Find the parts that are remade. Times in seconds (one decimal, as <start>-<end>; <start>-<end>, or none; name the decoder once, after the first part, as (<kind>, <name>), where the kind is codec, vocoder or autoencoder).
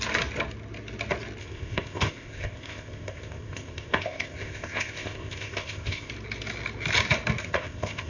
1.4-6.1 (codec, ZipCodec); 7.4-8.1